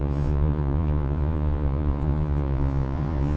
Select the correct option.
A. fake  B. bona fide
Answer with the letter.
A